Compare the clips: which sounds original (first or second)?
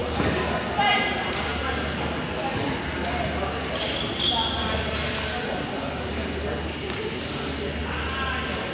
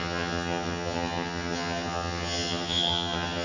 first